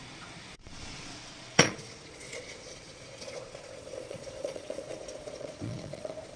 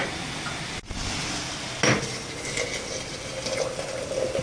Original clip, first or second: second